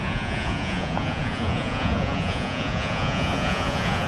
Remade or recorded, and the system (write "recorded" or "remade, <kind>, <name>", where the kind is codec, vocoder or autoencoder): remade, vocoder, Vocos